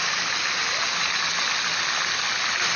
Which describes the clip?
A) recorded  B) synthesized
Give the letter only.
A